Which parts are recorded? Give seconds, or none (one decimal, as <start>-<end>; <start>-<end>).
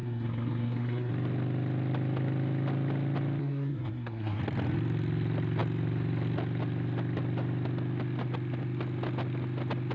1.1-3.4; 4.4-9.9